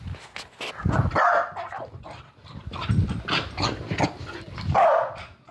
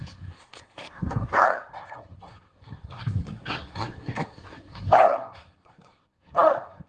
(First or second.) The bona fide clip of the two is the first